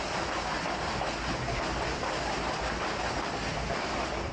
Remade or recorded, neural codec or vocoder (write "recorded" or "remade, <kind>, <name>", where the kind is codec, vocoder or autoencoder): recorded